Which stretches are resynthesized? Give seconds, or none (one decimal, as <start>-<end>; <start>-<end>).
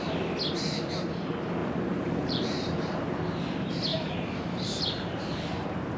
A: 1.6-3.2; 3.9-5.5